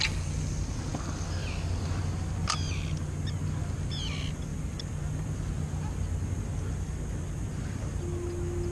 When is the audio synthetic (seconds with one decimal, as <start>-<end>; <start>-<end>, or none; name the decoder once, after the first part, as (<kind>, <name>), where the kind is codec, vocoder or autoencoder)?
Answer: none